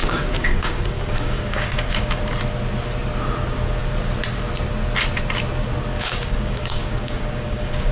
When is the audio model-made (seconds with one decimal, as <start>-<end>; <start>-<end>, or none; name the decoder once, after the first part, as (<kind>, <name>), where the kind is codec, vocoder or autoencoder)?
0.0-2.2 (codec, DAC); 5.9-7.9